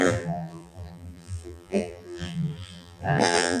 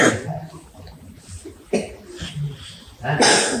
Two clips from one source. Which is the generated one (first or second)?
first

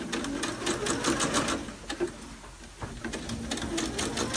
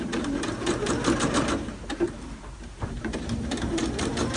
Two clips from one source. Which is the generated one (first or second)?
second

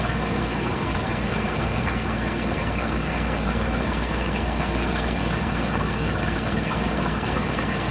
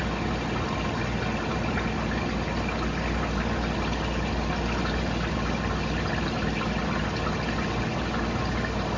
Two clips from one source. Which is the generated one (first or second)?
first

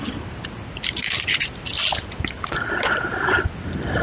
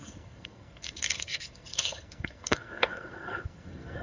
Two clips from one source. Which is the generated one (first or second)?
second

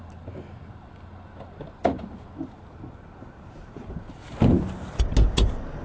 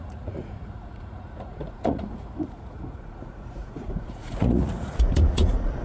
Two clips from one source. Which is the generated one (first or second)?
second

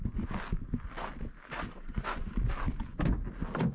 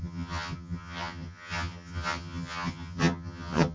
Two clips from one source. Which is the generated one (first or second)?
second